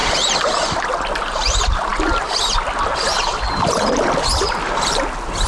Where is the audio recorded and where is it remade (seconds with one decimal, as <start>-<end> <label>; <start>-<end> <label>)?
0.0-5.5 recorded